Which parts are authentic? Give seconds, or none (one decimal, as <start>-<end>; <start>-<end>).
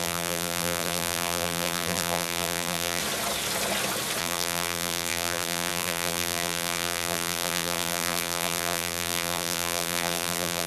3.0-4.2